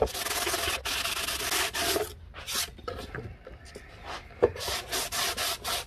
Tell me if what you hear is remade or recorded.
recorded